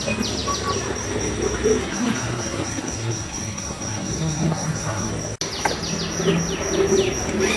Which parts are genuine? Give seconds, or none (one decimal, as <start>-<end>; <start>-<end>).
0.0-1.8; 5.1-7.6